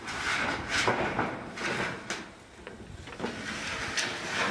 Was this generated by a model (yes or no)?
no